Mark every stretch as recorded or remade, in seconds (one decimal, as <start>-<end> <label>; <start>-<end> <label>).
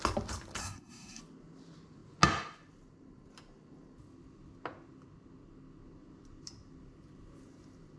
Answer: 0.0-0.6 recorded; 0.6-1.2 remade; 1.2-8.0 recorded